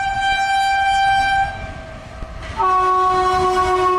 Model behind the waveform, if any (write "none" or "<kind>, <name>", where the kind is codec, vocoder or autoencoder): none